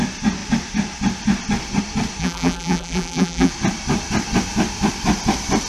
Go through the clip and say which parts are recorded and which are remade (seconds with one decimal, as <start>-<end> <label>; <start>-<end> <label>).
0.0-2.2 recorded; 2.2-3.5 remade; 3.5-5.7 recorded

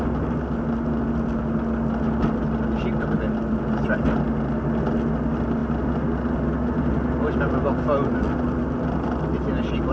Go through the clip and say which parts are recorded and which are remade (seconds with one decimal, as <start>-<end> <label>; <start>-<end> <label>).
0.0-9.9 recorded

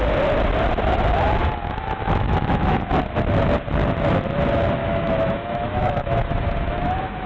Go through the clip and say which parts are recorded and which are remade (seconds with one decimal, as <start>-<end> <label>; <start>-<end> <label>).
0.0-1.4 recorded; 1.4-2.9 remade; 2.9-4.8 recorded; 4.8-7.3 remade

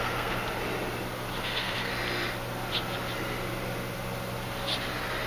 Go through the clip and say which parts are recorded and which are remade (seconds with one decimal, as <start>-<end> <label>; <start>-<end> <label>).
0.0-0.4 remade; 0.4-1.4 recorded; 1.4-1.9 remade; 1.9-5.3 recorded

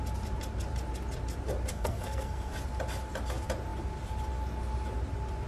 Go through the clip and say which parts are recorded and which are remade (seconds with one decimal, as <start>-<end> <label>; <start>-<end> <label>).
0.0-1.7 recorded; 1.7-2.5 remade; 2.5-5.5 recorded

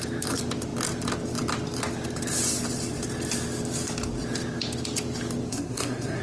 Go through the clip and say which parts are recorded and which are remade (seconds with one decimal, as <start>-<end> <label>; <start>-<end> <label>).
0.0-5.5 recorded; 5.5-6.2 remade